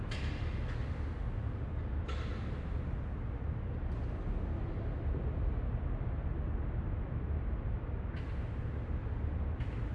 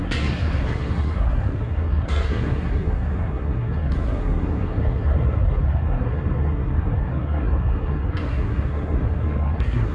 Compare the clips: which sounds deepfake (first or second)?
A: second